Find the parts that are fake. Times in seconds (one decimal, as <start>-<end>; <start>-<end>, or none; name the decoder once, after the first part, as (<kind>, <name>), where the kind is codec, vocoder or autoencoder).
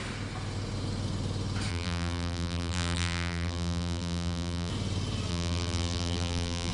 1.7-4.7 (vocoder, BigVGAN v2); 5.3-6.7